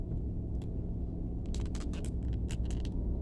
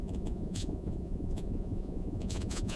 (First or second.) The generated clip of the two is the second